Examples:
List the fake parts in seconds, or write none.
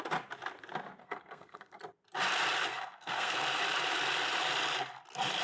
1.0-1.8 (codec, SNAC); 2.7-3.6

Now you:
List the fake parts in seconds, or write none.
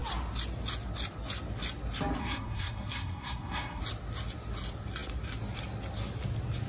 2.2-3.8 (codec, SNAC)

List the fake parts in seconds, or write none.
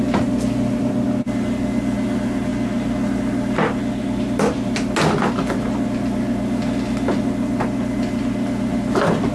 none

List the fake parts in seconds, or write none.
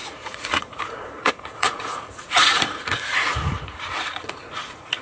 0.0-5.0 (vocoder, Vocos)